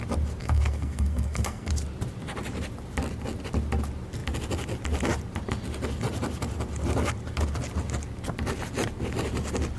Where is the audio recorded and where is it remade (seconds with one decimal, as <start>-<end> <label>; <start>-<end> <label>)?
0.0-0.4 recorded; 0.4-1.7 remade; 1.7-9.8 recorded